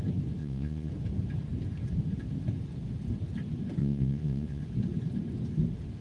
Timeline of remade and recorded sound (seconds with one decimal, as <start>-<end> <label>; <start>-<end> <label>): 0.0-0.4 recorded; 0.4-0.9 remade; 0.9-3.8 recorded; 3.8-4.6 remade; 4.6-6.0 recorded